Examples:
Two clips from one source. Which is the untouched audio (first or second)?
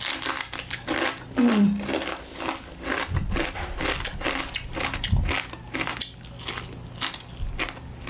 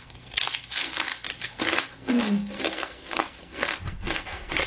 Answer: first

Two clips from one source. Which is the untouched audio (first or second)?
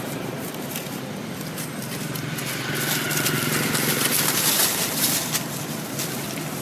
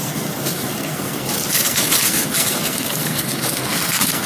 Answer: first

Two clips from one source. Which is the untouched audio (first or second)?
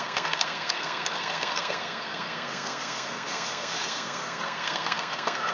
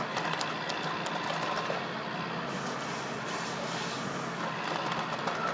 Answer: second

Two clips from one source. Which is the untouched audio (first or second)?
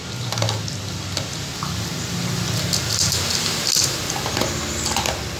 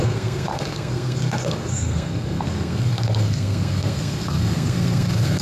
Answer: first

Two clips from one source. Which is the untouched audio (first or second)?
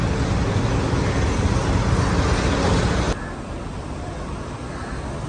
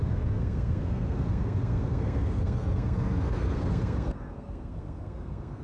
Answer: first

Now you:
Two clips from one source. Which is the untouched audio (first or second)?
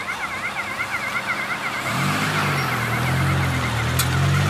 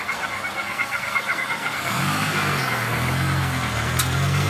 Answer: first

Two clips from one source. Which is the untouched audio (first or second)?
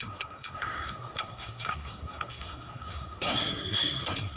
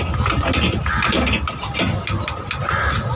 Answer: second